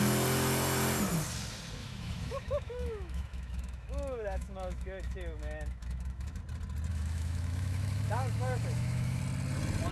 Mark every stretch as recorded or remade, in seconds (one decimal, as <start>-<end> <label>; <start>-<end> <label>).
0.0-1.8 recorded; 1.8-6.4 remade; 6.4-6.9 recorded; 6.9-9.2 remade; 9.2-9.9 recorded